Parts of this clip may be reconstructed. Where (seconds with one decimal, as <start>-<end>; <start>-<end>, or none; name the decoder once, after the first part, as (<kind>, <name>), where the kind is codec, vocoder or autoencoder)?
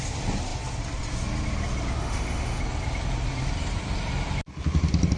2.0-2.6 (autoencoder, DAC-VAE)